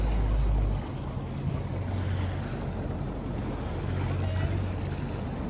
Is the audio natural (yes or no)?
yes